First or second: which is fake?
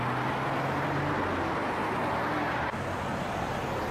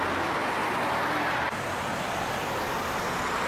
second